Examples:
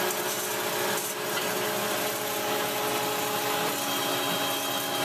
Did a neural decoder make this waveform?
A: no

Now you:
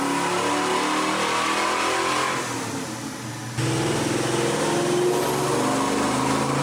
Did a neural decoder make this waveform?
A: no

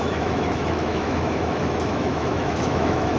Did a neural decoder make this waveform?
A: yes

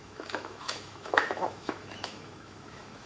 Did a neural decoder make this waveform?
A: yes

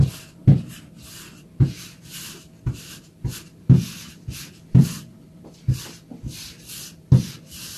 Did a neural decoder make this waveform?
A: no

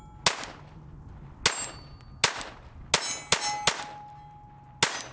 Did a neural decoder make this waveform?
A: no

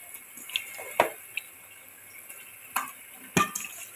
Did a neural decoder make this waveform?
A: no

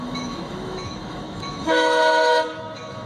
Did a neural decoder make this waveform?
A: yes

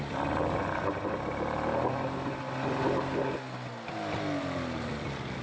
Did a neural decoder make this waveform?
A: no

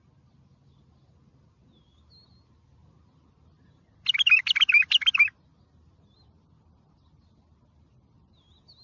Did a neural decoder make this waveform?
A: no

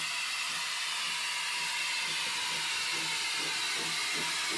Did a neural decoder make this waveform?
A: no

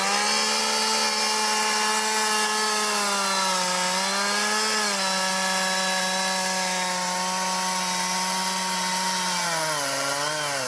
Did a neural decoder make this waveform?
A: no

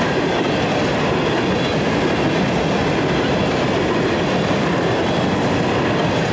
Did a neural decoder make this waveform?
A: no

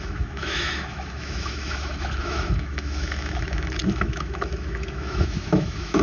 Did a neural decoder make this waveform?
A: yes